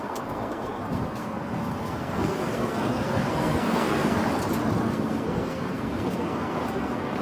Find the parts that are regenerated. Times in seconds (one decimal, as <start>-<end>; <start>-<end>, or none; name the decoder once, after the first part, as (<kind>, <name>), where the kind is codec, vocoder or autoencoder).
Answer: 0.0-4.2 (codec, SNAC); 4.8-7.2